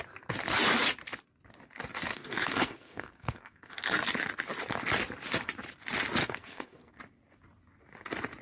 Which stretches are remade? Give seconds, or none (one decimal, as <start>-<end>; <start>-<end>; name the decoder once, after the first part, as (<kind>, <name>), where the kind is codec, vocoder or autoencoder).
2.1-3.7 (codec, SNAC); 6.2-7.0